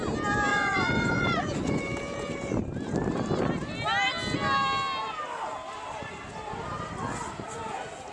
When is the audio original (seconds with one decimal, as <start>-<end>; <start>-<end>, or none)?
0.0-0.5; 1.8-8.1